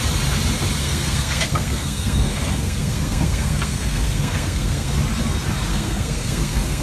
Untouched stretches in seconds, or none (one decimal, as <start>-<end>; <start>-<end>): 0.0-0.8; 4.9-5.7